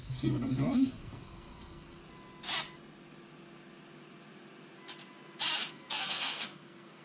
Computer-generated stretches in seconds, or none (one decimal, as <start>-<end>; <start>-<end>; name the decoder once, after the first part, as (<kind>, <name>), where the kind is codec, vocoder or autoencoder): 0.0-2.0 (codec, SNAC); 5.7-7.0